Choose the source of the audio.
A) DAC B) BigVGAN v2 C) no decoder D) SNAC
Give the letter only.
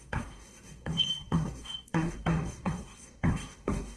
D